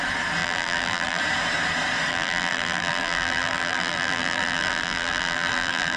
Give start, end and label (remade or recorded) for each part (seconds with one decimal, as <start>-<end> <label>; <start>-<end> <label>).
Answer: 0.0-0.4 recorded; 0.4-1.2 remade; 1.2-2.1 recorded; 2.1-6.0 remade